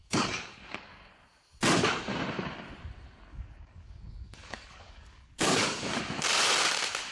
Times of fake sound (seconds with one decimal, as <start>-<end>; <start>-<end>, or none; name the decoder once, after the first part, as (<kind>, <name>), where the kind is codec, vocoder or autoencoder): 0.0-1.0 (codec, DAC); 3.3-6.0